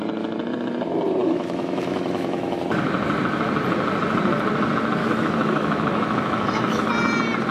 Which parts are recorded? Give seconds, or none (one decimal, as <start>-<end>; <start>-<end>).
0.0-1.2; 2.6-5.0; 6.9-7.5